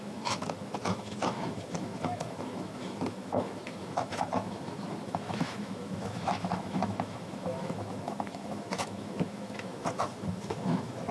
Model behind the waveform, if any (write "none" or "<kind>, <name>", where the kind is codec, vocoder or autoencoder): autoencoder, DAC-VAE